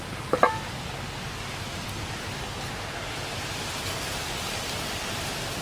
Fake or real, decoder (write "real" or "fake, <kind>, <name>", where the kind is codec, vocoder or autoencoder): real